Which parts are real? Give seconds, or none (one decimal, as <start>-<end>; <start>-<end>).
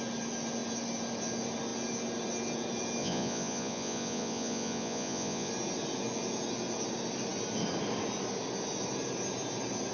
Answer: 0.0-3.0; 5.5-9.9